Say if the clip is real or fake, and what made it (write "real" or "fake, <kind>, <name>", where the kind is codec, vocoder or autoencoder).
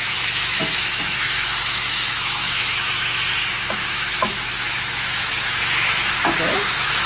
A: fake, autoencoder, DAC-VAE